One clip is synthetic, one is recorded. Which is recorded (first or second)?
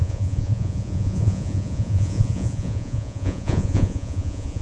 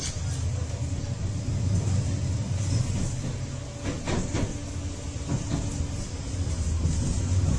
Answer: second